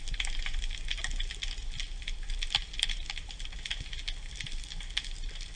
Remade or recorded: recorded